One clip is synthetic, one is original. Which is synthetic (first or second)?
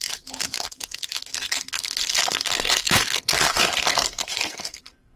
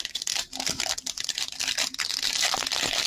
first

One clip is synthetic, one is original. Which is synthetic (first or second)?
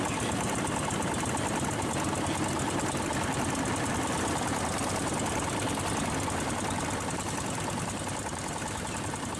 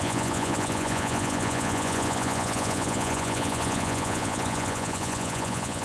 second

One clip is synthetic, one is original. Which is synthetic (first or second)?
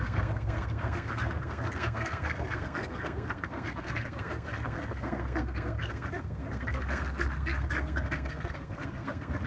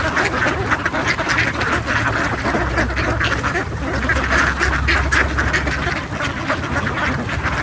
first